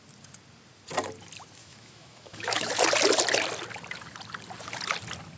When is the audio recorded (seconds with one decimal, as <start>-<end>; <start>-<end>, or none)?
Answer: 0.0-1.6; 2.7-5.4